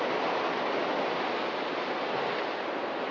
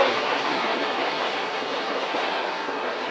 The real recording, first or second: first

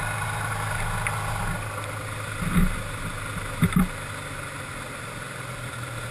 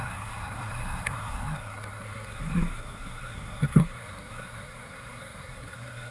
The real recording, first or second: first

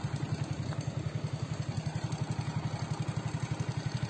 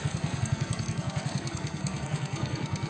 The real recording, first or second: first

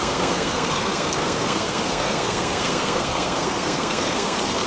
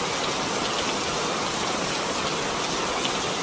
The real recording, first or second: second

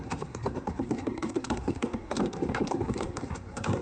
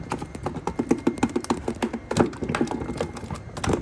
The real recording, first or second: second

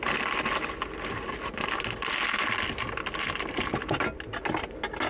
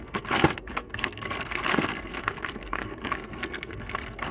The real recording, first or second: first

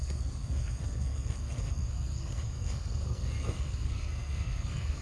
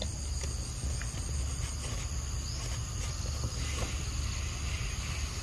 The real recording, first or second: second